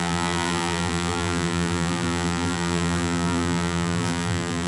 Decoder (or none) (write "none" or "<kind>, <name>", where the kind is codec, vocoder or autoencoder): vocoder, BigVGAN v2